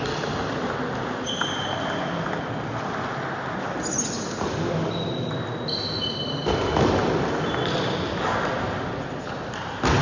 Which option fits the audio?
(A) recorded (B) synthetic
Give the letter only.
A